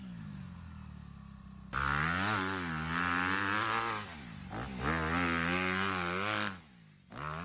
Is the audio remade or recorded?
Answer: recorded